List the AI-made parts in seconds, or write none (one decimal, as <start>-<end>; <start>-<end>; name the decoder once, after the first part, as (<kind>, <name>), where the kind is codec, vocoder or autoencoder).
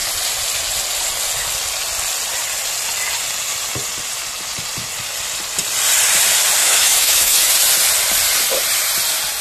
6.6-7.5 (autoencoder, DAC-VAE)